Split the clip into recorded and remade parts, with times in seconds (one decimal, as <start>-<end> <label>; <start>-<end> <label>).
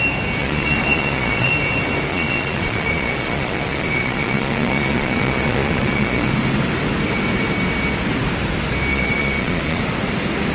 0.0-0.4 recorded; 0.4-1.5 remade; 1.5-2.1 recorded; 2.1-6.3 remade; 6.3-8.9 recorded; 8.9-9.8 remade; 9.8-10.5 recorded